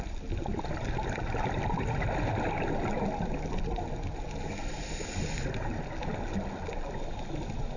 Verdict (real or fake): real